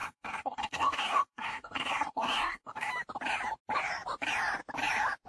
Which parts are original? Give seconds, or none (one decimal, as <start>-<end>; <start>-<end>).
2.9-5.3